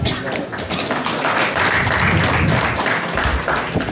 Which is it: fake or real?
real